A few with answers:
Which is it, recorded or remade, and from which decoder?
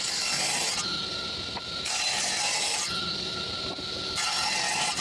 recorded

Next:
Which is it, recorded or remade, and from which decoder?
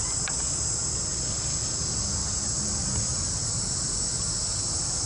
recorded